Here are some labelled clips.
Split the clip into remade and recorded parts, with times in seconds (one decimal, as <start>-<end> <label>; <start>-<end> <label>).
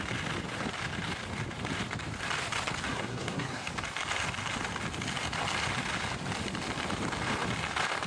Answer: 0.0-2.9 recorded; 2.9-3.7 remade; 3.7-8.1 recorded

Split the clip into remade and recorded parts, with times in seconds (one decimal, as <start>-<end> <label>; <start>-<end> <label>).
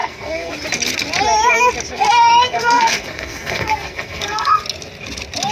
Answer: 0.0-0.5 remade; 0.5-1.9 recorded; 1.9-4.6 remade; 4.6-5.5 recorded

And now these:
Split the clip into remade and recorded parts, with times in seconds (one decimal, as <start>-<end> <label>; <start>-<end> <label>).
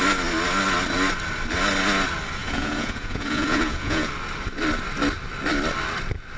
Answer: 0.0-2.4 recorded; 2.4-4.1 remade; 4.1-6.4 recorded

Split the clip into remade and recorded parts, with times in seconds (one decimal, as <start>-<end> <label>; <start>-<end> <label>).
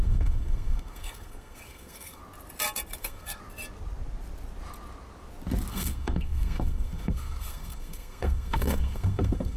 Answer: 0.0-2.2 remade; 2.2-3.0 recorded; 3.0-3.4 remade; 3.4-5.7 recorded; 5.7-9.6 remade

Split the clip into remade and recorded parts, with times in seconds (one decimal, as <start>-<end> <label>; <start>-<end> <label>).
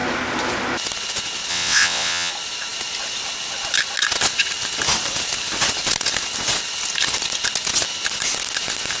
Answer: 0.0-1.5 recorded; 1.5-2.3 remade; 2.3-9.0 recorded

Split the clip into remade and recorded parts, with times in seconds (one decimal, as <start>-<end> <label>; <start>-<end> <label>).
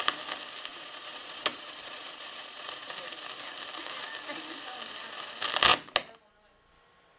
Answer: 0.0-0.7 recorded; 0.7-2.9 remade; 2.9-7.2 recorded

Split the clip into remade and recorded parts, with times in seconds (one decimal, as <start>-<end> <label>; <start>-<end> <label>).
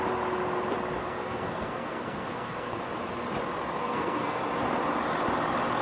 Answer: 0.0-1.0 recorded; 1.0-2.8 remade; 2.8-3.8 recorded; 3.8-4.4 remade; 4.4-5.8 recorded